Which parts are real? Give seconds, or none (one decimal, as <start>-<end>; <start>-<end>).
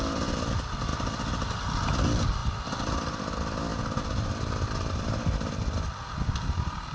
0.0-2.4; 3.2-6.9